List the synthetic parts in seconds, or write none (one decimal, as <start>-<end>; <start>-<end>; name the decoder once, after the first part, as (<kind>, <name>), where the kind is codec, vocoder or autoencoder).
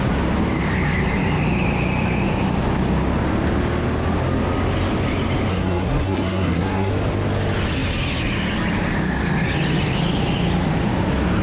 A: 5.5-6.9 (codec, SNAC)